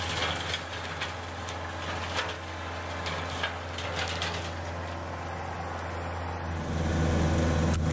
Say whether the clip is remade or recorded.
recorded